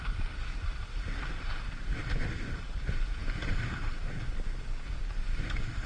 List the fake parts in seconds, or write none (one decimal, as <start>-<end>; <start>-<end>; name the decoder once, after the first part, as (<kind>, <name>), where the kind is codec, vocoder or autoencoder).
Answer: none